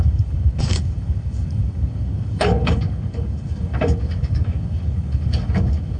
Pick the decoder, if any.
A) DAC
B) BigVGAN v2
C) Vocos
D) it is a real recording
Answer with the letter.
A